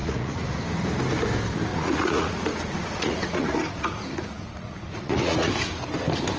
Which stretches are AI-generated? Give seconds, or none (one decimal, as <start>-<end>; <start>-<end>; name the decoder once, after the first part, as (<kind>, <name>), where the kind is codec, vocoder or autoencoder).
0.0-0.6 (vocoder, Vocos); 1.7-5.5